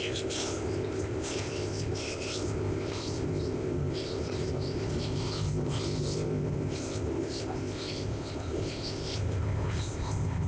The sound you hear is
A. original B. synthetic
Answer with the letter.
B